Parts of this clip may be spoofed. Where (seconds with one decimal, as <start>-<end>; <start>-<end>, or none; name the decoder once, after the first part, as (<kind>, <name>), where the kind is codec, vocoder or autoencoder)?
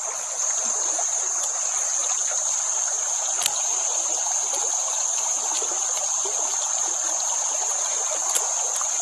none